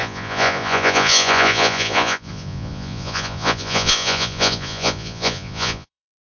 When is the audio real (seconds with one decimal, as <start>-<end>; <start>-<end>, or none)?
none